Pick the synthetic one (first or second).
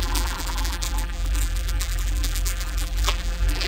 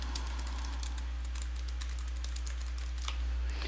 first